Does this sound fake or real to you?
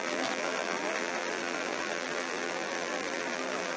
fake